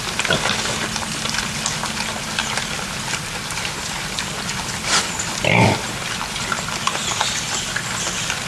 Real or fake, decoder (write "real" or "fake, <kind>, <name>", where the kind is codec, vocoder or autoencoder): real